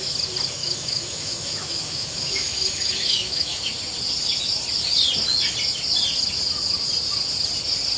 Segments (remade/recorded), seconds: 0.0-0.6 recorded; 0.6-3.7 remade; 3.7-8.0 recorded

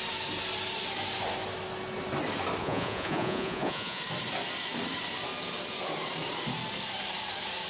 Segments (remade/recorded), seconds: 0.0-2.6 recorded; 2.6-4.0 remade; 4.0-7.7 recorded

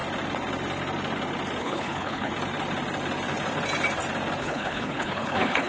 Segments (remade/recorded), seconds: 0.0-1.6 recorded; 1.6-2.3 remade; 2.3-4.4 recorded; 4.4-5.7 remade

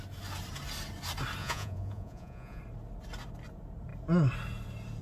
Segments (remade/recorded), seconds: 0.0-1.4 recorded; 1.4-2.6 remade; 2.6-5.0 recorded